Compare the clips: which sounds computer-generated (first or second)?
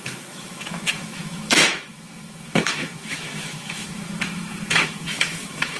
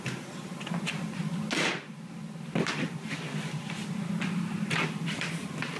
first